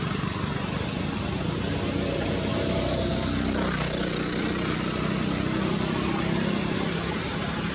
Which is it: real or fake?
real